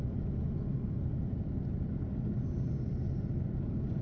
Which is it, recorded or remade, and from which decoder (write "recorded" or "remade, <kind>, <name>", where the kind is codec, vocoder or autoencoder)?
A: recorded